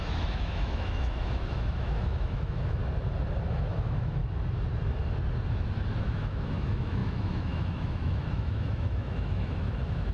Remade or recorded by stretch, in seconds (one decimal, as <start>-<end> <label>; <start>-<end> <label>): 0.0-2.8 remade; 2.8-3.5 recorded; 3.5-4.2 remade; 4.2-6.0 recorded; 6.0-10.1 remade